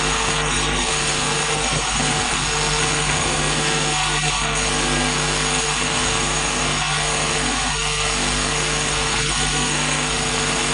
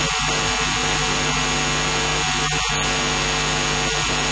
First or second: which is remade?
first